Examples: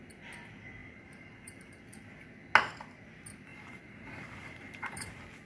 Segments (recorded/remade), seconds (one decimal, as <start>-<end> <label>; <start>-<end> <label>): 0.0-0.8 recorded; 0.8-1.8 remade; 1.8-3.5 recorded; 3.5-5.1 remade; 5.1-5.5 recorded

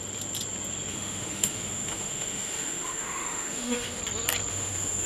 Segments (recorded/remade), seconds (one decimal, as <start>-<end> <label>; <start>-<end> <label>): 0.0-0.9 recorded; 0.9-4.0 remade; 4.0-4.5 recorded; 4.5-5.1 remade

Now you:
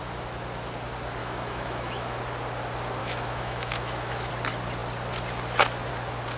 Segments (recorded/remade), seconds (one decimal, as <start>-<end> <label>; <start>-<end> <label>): 0.0-1.2 recorded; 1.2-2.2 remade; 2.2-3.0 recorded; 3.0-4.3 remade; 4.3-6.4 recorded

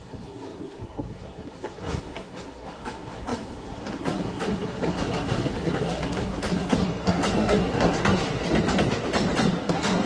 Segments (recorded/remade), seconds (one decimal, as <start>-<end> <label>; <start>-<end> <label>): 0.0-8.4 remade; 8.4-9.6 recorded; 9.6-10.1 remade